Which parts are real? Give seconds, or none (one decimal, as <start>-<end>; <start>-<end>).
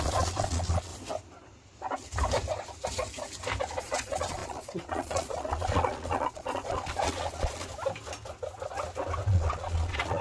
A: 0.9-3.8; 7.7-9.3